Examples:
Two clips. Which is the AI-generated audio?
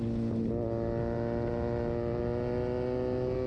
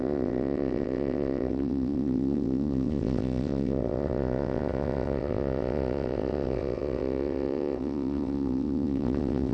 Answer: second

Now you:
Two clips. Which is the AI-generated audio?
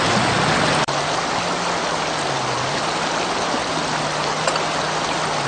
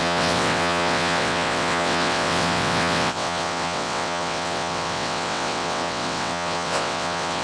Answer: second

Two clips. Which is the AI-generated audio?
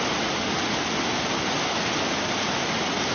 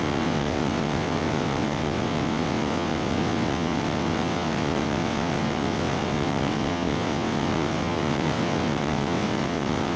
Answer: second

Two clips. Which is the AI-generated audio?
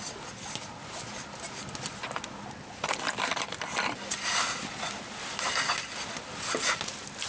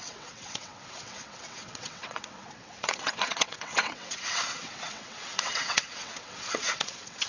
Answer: second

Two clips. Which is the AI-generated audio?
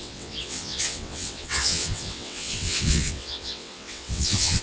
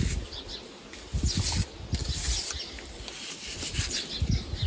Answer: first